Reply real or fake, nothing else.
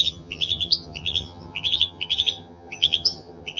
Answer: fake